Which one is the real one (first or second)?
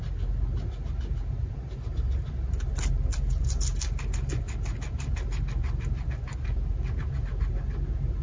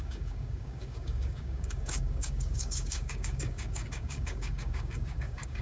first